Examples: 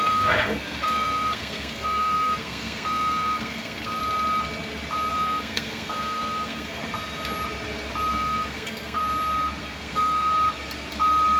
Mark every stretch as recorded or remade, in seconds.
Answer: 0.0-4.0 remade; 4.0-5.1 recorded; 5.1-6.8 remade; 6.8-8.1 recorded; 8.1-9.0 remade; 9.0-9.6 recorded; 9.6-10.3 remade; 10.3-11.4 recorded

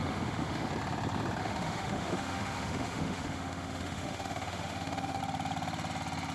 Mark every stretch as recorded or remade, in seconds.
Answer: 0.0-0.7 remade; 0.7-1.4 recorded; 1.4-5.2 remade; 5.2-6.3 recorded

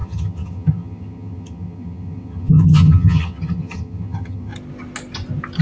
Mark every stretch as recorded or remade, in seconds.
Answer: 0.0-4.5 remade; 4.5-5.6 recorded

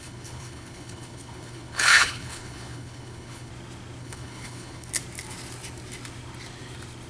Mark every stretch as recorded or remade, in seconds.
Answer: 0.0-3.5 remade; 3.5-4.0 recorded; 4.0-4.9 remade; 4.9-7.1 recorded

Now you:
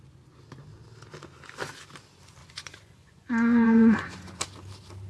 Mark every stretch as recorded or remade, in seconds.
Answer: 0.0-2.4 recorded; 2.4-4.4 remade; 4.4-5.1 recorded

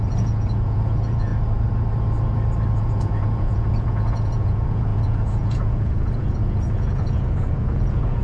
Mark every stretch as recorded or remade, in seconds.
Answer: 0.0-1.3 remade; 1.3-2.8 recorded; 2.8-8.2 remade

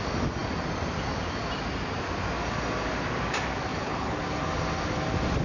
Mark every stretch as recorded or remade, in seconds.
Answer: 0.0-3.7 recorded; 3.7-4.2 remade; 4.2-5.4 recorded

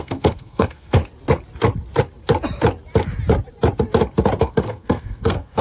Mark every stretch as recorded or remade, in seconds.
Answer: 0.0-1.0 remade; 1.0-4.4 recorded; 4.4-5.6 remade